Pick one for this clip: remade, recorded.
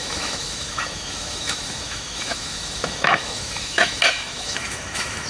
remade